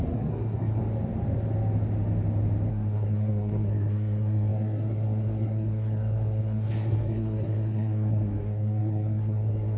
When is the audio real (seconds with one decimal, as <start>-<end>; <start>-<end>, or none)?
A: 0.8-2.7